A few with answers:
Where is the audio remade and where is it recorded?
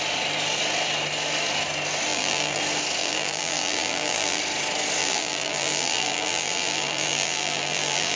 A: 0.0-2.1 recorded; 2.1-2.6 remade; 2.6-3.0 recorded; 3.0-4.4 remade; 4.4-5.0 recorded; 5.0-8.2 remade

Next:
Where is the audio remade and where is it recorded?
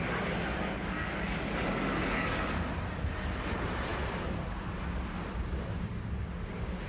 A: 0.0-0.5 recorded; 0.5-2.5 remade; 2.5-6.9 recorded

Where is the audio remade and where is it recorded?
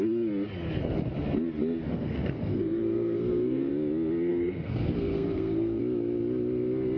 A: 0.0-1.9 recorded; 1.9-3.7 remade; 3.7-4.3 recorded; 4.3-5.8 remade; 5.8-7.0 recorded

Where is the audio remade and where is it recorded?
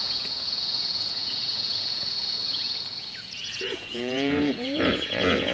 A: 0.0-5.5 remade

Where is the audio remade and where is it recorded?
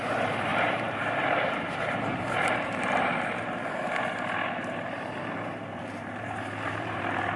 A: 0.0-3.1 remade; 3.1-4.6 recorded; 4.6-7.4 remade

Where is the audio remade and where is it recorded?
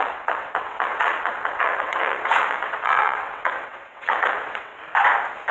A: 0.0-4.7 remade; 4.7-5.5 recorded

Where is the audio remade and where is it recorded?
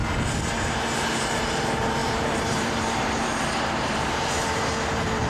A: 0.0-0.6 recorded; 0.6-5.3 remade